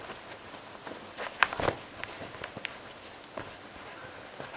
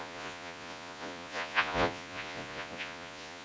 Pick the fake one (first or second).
second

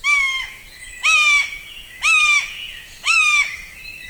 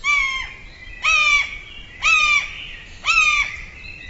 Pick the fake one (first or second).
first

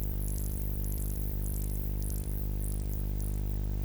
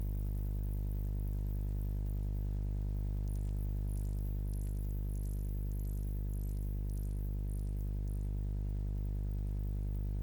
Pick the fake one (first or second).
first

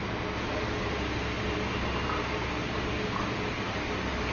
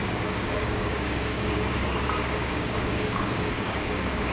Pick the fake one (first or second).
second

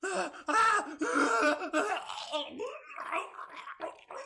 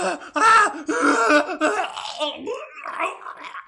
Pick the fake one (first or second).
first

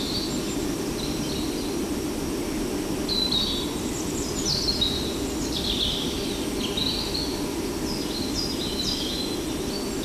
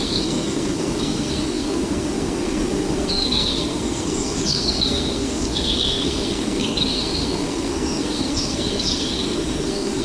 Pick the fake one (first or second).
second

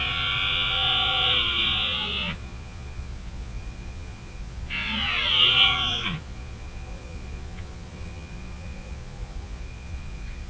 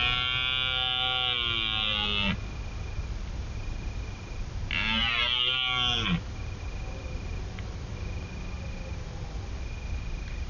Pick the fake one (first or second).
first